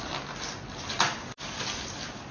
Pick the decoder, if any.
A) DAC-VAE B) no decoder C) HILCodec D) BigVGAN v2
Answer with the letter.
D